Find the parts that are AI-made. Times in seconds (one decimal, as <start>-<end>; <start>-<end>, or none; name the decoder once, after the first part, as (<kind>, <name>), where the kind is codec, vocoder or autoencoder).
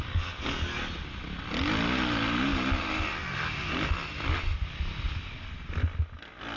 none